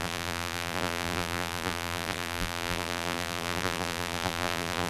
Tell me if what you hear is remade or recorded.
remade